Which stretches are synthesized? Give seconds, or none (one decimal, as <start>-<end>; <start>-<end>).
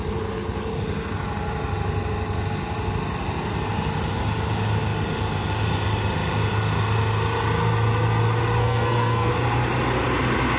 8.6-9.3